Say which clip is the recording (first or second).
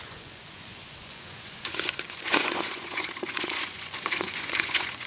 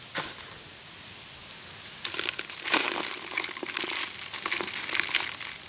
second